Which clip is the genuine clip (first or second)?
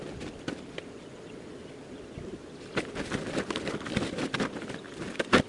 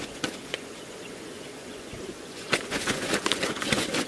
first